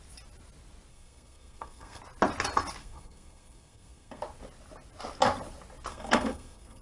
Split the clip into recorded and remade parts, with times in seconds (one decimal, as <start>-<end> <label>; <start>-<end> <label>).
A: 0.0-0.9 recorded; 0.9-2.0 remade; 2.0-2.8 recorded; 2.8-4.2 remade; 4.2-5.9 recorded; 5.9-6.8 remade